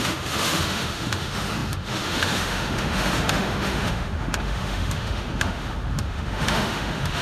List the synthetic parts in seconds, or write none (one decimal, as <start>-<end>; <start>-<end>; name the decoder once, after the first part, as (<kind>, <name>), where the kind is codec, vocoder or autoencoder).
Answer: 0.0-7.2 (autoencoder, DAC-VAE)